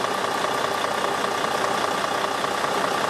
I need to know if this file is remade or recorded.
recorded